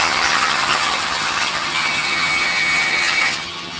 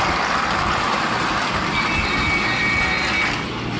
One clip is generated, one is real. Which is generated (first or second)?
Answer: first